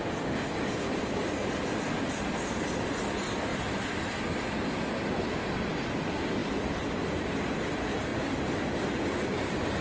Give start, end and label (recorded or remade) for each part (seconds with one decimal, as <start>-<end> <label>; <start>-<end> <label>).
0.0-9.8 recorded